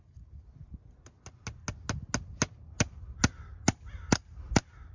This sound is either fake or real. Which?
real